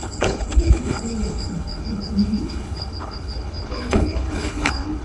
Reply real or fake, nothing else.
fake